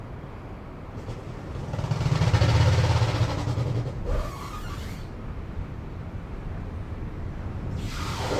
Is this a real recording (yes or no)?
yes